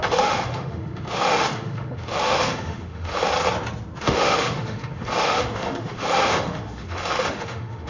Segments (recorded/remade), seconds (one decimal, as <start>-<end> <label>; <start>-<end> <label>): 0.0-3.3 remade; 3.3-4.0 recorded; 4.0-7.9 remade